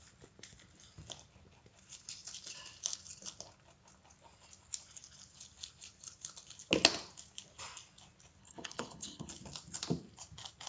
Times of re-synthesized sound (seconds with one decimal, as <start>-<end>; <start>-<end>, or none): 8.4-9.3